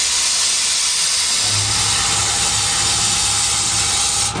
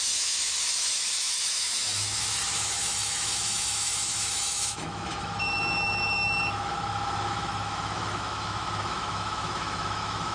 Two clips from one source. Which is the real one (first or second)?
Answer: first